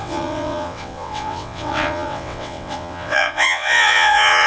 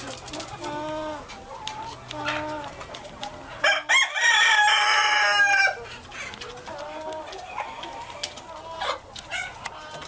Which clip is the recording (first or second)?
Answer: second